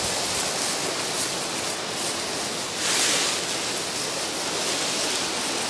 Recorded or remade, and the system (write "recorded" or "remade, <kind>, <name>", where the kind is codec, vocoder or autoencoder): recorded